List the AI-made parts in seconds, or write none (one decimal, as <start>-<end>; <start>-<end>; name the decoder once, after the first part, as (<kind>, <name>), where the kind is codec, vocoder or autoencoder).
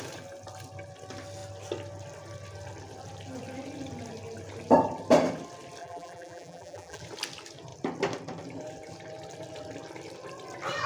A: 5.8-7.0 (vocoder, BigVGAN v2)